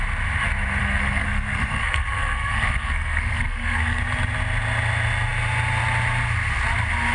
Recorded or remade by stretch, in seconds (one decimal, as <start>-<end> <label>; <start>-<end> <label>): 0.0-0.8 recorded; 0.8-4.0 remade; 4.0-7.1 recorded

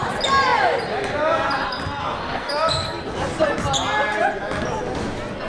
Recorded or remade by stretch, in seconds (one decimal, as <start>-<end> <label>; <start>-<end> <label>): 0.0-2.0 recorded; 2.0-2.5 remade; 2.5-5.5 recorded

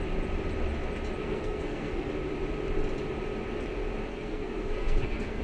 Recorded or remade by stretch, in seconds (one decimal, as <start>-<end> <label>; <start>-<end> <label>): 0.0-1.2 recorded; 1.2-2.1 remade; 2.1-4.1 recorded; 4.1-5.4 remade

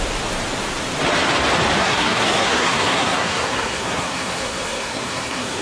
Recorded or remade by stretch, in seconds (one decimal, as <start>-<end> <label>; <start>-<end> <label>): 0.0-1.8 recorded; 1.8-5.6 remade

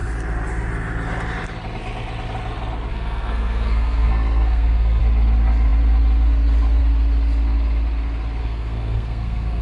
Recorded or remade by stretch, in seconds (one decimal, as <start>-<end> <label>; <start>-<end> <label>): 0.0-2.9 recorded; 2.9-5.0 remade; 5.0-8.4 recorded; 8.4-9.6 remade